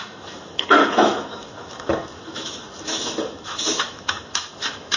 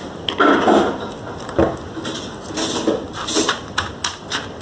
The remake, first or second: first